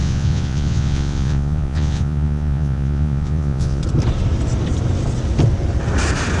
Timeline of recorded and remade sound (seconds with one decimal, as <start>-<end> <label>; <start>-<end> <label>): 0.0-3.8 remade; 3.8-6.4 recorded